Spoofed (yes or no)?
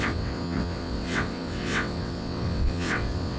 yes